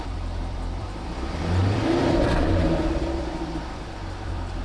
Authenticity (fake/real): fake